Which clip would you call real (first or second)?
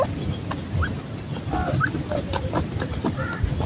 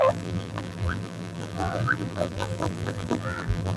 first